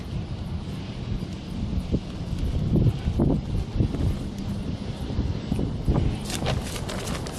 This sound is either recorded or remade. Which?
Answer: recorded